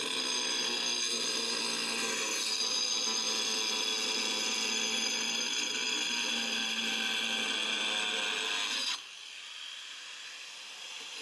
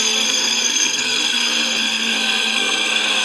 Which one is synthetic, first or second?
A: second